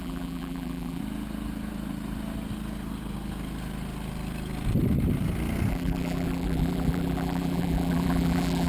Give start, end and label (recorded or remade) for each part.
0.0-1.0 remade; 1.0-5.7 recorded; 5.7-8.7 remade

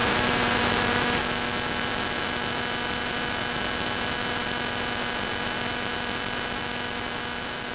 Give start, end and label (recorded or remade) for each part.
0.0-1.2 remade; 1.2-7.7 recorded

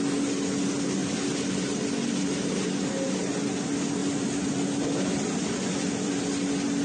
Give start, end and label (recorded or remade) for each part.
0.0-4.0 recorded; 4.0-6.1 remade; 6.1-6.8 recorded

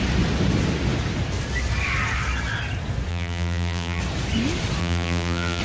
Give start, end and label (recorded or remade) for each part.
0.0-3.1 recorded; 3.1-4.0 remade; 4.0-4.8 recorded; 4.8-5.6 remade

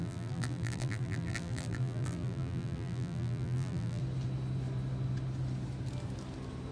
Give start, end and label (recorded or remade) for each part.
0.0-4.0 remade; 4.0-6.7 recorded